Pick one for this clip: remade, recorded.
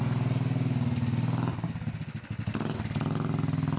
recorded